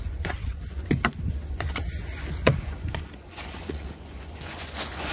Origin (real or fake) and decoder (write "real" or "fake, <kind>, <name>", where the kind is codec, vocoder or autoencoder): fake, vocoder, Vocos